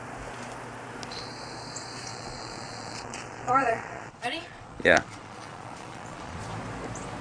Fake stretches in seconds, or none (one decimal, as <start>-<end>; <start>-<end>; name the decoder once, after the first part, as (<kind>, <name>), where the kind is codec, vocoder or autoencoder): 2.1-6.4 (vocoder, Vocos)